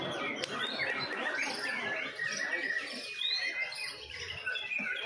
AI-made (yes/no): no